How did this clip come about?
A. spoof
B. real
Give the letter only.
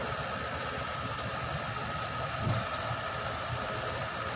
B